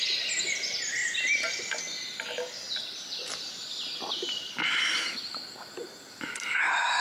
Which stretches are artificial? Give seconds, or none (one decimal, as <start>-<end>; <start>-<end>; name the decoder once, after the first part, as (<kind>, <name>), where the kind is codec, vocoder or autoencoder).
none